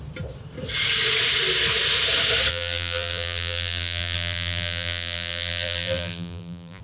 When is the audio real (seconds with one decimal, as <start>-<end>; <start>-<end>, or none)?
0.0-2.5

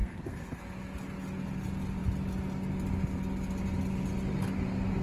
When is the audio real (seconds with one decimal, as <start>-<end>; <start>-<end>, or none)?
0.6-5.0

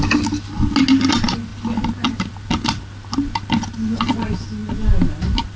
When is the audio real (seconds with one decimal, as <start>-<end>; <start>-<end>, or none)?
0.0-5.6

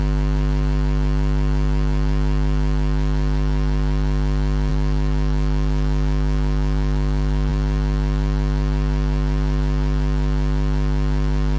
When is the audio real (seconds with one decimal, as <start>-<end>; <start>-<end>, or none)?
0.0-4.7; 7.5-11.6